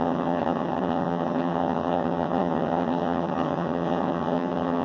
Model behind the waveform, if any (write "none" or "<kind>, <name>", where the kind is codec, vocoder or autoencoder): vocoder, HiFi-GAN